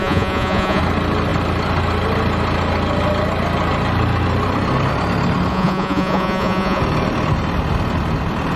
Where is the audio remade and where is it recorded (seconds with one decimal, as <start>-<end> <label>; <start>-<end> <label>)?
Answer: 0.0-0.8 remade; 0.8-5.5 recorded; 5.5-6.8 remade; 6.8-8.6 recorded